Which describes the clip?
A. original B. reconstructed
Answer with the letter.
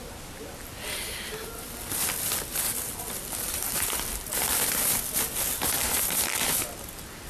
A